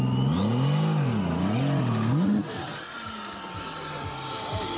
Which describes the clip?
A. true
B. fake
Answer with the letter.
A